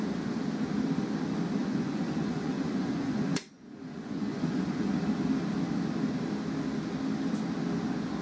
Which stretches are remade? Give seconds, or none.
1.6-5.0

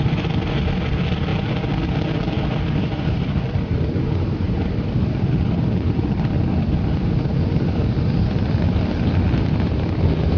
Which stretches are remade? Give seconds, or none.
0.0-1.3; 2.4-10.4

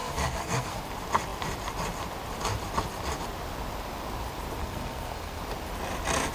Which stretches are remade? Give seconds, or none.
0.0-0.8; 4.6-5.4